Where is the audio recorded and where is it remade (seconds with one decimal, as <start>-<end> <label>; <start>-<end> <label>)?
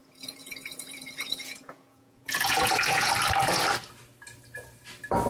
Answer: 0.0-3.1 remade; 3.1-5.3 recorded